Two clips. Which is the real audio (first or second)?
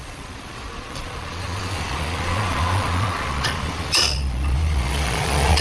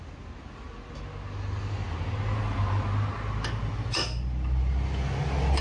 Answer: second